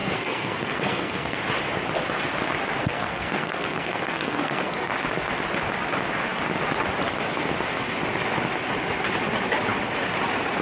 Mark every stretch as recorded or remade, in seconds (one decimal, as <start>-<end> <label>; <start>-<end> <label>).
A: 0.0-1.4 remade; 1.4-2.8 recorded; 2.8-4.9 remade; 4.9-10.6 recorded